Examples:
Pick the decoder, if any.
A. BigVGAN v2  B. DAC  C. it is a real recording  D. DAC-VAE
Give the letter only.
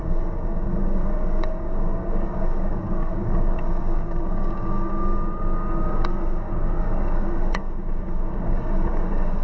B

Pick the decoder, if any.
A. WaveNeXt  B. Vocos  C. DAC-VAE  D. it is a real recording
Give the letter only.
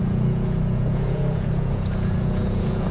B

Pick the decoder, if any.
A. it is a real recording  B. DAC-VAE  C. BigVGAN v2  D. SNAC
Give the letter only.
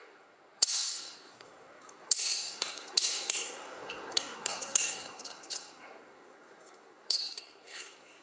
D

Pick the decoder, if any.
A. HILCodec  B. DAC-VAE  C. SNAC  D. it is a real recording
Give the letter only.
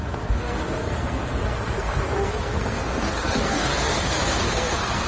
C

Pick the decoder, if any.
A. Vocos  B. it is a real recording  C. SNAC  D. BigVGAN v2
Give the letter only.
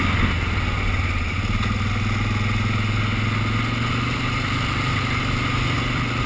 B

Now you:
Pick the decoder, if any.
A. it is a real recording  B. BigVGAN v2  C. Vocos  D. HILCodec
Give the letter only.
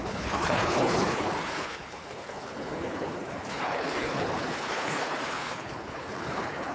D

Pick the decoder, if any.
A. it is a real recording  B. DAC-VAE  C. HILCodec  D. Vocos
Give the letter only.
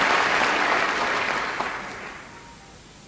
A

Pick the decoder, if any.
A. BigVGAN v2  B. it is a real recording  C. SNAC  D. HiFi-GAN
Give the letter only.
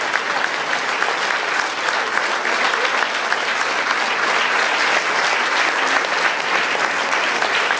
B